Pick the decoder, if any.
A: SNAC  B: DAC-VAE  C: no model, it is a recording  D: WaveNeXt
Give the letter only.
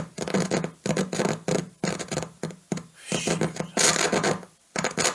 C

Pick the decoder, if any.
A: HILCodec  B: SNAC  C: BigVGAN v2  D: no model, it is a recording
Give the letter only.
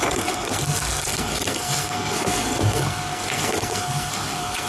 B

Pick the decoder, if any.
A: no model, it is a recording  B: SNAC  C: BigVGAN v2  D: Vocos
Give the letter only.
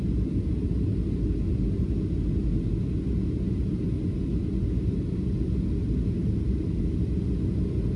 A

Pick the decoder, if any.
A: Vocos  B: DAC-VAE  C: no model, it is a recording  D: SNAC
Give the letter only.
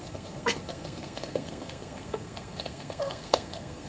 D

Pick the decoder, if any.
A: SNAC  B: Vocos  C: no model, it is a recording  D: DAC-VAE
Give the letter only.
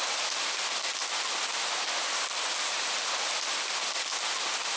C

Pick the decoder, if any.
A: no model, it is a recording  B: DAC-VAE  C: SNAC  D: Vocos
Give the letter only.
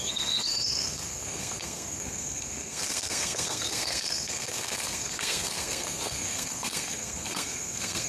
C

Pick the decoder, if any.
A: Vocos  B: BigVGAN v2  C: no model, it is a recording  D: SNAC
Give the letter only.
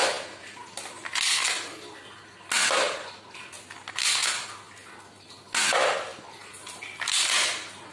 C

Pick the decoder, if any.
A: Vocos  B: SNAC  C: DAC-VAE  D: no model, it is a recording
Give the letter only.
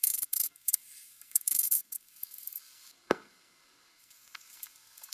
B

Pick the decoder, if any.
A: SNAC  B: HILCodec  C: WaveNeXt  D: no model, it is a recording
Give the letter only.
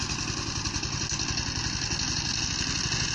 D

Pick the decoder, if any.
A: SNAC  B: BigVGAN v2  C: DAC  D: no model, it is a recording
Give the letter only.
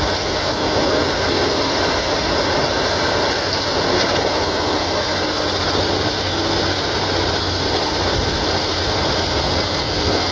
D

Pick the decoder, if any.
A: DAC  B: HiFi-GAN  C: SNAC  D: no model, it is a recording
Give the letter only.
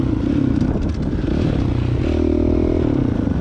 D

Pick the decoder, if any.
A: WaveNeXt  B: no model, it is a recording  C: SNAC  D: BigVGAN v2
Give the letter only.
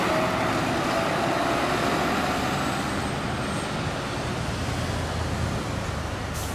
B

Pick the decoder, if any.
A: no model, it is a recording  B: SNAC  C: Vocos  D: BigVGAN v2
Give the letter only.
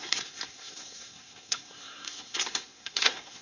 B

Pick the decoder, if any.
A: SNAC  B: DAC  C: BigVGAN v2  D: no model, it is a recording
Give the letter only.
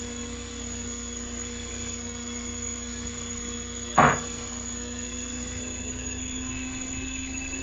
A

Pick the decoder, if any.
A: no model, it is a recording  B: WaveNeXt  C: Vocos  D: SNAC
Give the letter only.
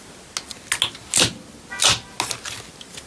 A